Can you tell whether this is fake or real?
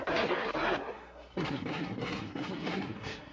fake